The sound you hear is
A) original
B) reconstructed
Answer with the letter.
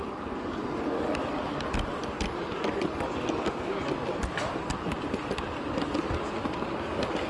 A